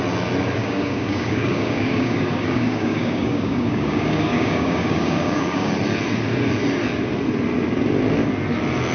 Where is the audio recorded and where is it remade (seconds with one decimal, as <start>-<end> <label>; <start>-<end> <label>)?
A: 0.0-0.6 recorded; 0.6-5.7 remade; 5.7-8.9 recorded